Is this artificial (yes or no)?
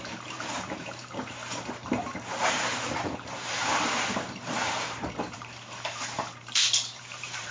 yes